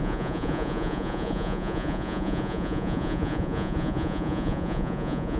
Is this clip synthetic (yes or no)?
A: yes